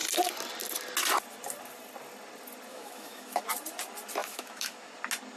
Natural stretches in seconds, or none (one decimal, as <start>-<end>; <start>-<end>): 0.0-2.7; 3.4-4.2; 4.9-5.4